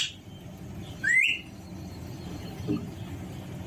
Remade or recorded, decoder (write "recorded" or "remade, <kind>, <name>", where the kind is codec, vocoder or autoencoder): recorded